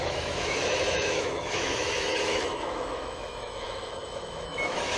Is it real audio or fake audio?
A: fake